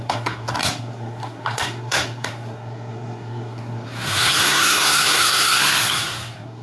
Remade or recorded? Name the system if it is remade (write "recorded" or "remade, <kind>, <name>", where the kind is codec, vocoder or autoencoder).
remade, codec, SNAC